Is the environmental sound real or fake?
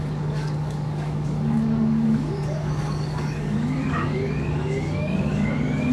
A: fake